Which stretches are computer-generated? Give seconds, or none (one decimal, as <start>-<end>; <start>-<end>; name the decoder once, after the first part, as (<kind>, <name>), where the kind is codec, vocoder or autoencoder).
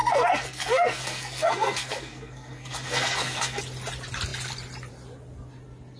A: 0.0-3.6 (codec, SNAC)